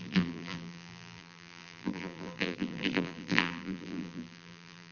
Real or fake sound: fake